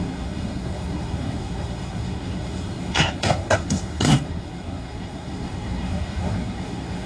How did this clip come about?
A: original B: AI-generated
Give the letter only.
B